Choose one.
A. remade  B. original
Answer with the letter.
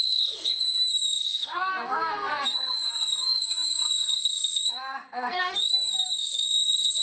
A